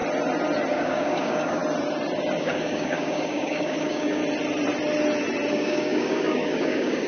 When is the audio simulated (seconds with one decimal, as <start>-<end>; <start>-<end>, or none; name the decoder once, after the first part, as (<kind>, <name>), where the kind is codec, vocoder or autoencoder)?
0.7-1.6 (codec, DAC); 2.4-4.2; 5.5-7.1

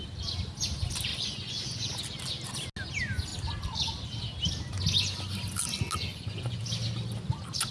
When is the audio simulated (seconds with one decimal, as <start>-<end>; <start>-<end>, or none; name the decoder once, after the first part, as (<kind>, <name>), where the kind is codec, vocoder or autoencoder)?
1.1-1.9 (vocoder, Vocos); 6.1-6.6

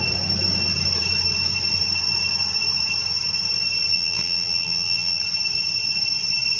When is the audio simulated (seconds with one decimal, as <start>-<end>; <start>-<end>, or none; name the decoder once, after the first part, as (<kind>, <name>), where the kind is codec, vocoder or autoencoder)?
3.9-5.2 (vocoder, BigVGAN v2)

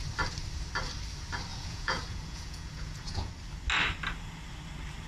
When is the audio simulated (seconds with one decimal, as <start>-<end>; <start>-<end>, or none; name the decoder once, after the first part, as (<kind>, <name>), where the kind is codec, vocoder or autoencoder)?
1.5-3.3 (vocoder, Vocos)

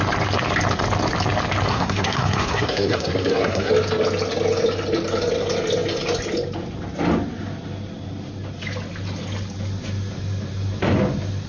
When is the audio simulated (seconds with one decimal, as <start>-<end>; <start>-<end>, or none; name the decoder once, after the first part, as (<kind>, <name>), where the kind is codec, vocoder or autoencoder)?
1.7-3.7 (codec, SNAC)

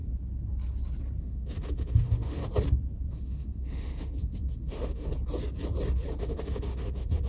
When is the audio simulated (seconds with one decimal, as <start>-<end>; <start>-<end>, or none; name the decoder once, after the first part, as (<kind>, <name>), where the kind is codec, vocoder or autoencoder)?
1.2-2.4 (autoencoder, DAC-VAE); 3.1-5.1; 6.2-7.3

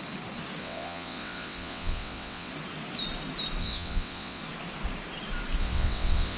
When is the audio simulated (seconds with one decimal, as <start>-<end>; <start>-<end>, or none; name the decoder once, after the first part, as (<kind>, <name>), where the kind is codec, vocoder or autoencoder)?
0.6-2.5 (vocoder, WaveNeXt); 3.6-4.4; 5.6-6.4

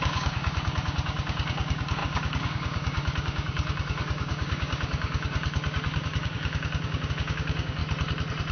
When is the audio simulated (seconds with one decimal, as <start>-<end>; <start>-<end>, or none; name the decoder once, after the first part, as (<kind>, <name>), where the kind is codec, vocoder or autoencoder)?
0.0-7.8 (codec, DAC)